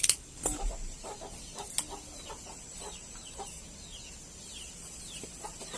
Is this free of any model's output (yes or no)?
yes